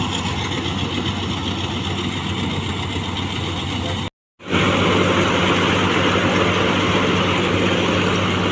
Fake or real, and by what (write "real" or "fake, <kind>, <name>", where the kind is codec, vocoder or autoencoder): real